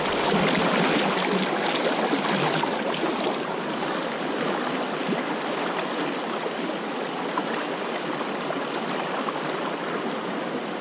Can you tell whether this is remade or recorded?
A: recorded